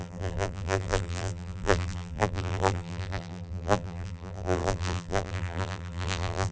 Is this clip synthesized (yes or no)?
yes